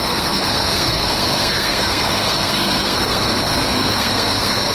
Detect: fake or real fake